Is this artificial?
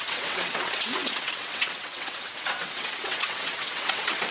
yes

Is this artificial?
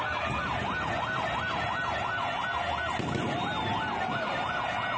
no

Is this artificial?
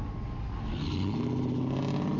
no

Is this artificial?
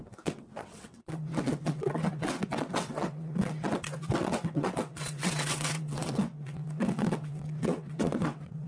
yes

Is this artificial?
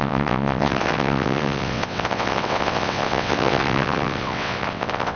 yes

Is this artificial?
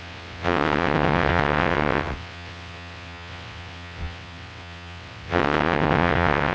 yes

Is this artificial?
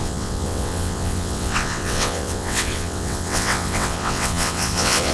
yes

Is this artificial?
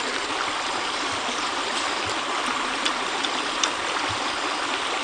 no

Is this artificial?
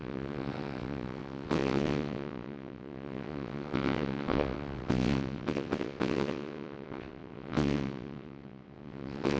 yes